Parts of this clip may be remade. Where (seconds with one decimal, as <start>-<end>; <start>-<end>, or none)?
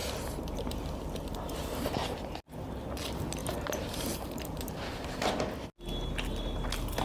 0.0-0.8; 3.4-5.4